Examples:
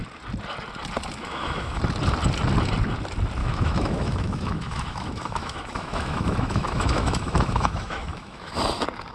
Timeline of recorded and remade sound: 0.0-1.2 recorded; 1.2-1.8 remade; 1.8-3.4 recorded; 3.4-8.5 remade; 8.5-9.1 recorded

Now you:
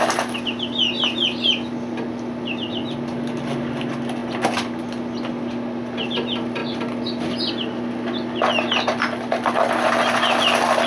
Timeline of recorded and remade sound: 0.0-10.9 recorded